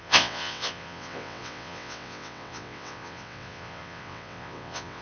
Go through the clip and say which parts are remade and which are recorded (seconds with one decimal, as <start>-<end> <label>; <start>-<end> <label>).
0.0-5.0 remade